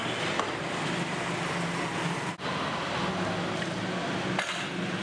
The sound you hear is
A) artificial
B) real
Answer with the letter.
B